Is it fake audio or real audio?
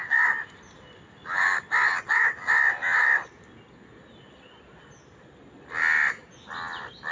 real